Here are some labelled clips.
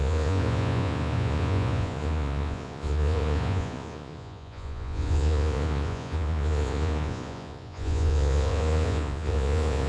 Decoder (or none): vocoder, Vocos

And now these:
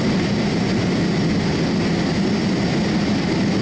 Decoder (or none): none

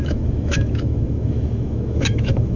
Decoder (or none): autoencoder, DAC-VAE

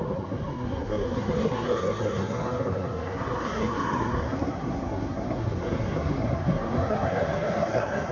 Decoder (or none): codec, SNAC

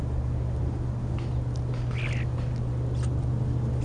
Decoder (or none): none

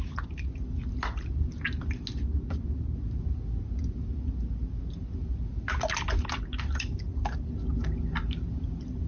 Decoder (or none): none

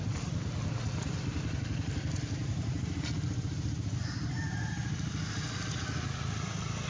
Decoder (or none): none